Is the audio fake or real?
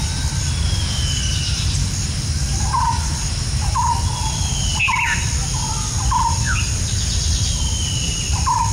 real